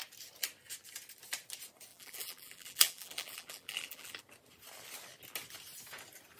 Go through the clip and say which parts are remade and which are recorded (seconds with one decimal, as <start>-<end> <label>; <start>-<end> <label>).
0.0-1.9 recorded; 1.9-4.2 remade; 4.2-6.4 recorded